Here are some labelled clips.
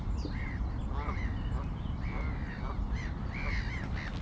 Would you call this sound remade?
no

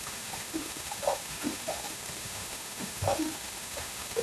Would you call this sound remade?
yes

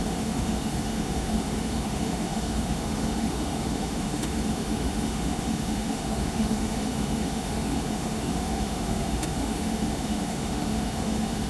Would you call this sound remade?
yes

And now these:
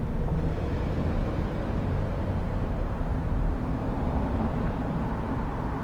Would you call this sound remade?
yes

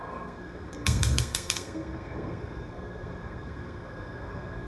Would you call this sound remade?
yes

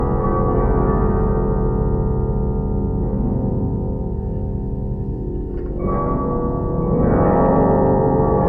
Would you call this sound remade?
no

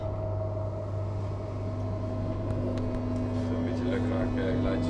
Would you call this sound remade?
no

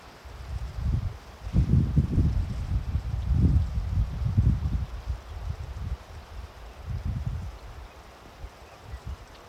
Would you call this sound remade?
yes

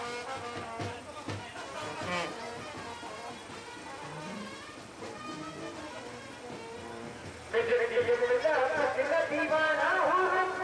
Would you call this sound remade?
no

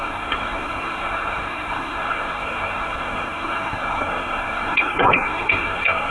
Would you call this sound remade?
yes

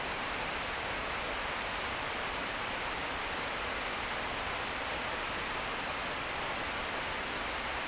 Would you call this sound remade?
yes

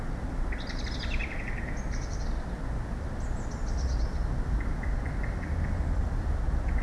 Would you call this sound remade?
no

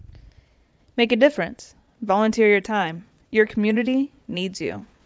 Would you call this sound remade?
yes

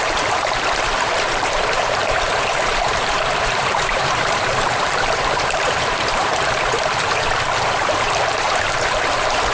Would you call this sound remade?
yes